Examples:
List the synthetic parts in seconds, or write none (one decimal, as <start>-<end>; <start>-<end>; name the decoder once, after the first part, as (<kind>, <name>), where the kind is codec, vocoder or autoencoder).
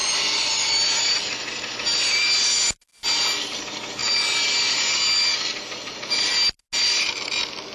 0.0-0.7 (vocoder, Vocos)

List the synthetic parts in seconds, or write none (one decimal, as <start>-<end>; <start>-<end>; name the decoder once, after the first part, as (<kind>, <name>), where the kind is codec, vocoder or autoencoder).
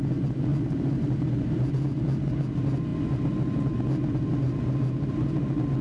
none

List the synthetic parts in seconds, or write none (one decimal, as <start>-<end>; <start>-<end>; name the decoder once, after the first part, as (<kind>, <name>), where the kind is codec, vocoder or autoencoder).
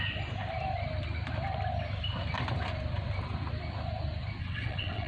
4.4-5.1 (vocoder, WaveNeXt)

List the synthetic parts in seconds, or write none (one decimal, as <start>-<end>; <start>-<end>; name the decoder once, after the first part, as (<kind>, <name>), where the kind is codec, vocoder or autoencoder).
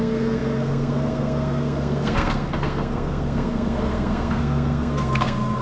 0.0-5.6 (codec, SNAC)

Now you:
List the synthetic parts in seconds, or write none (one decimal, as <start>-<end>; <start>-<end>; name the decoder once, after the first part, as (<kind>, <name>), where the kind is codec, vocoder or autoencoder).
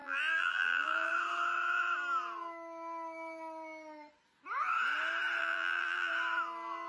0.0-1.1 (vocoder, BigVGAN v2); 5.4-6.1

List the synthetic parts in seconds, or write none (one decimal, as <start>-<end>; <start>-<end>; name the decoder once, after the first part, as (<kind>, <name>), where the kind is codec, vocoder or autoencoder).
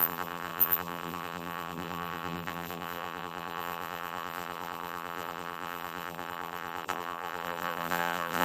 0.0-8.4 (vocoder, BigVGAN v2)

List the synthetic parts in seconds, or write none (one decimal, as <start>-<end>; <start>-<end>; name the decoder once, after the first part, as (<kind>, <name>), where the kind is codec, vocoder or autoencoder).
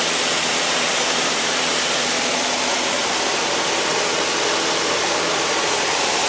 0.0-3.9 (vocoder, BigVGAN v2); 4.6-6.3